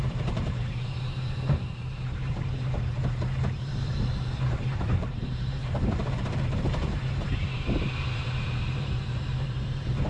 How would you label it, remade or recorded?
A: remade